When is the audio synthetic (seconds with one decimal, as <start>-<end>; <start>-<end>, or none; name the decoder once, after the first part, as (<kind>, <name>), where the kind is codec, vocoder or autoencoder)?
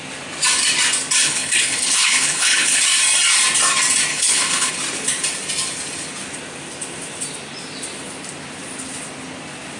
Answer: 1.2-2.8 (codec, HILCodec); 4.1-4.7